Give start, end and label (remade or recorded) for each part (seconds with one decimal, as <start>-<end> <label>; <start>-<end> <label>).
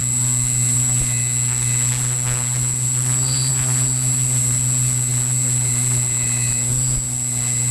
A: 0.0-7.7 recorded